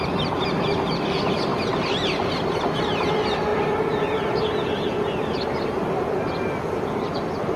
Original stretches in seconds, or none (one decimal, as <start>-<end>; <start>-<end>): 0.0-7.6

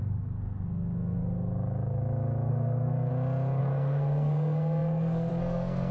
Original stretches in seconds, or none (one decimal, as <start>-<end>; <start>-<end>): 1.2-2.5; 3.1-3.6

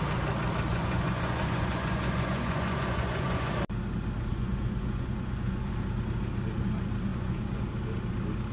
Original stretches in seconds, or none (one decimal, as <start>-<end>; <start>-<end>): 0.0-0.7; 3.5-4.3; 5.7-7.1; 7.6-8.5

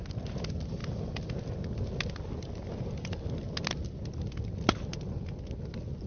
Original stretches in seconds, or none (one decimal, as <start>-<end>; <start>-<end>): 0.0-6.1

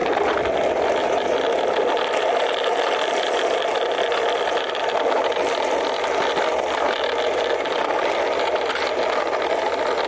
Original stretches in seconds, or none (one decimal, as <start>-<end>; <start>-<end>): 1.5-10.1

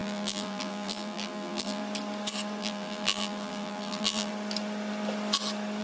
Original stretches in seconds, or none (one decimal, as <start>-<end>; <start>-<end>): 1.8-2.6; 4.3-5.8

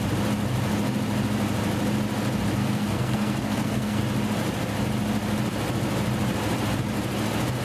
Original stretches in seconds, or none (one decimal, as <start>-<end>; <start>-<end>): 0.0-2.6; 4.0-7.6